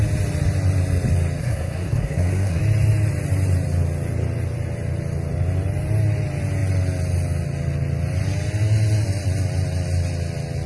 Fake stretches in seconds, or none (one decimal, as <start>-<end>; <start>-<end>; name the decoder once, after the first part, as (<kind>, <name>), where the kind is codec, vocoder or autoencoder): 1.4-2.6 (codec, SNAC)